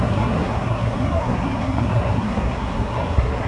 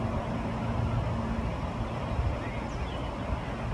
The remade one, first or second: first